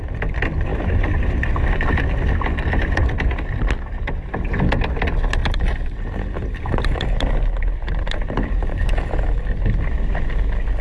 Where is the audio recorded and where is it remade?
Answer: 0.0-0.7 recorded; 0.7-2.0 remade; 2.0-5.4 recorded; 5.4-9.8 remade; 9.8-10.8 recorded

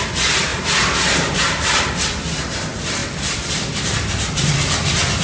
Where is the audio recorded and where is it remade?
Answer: 0.0-0.5 recorded; 0.5-1.8 remade; 1.8-5.2 recorded

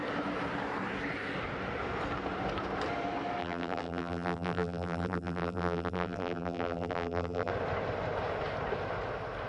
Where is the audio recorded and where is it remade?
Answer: 0.0-3.4 recorded; 3.4-7.5 remade; 7.5-9.5 recorded

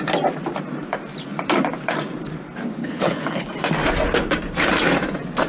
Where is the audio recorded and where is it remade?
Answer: 0.0-2.8 recorded; 2.8-3.5 remade; 3.5-5.5 recorded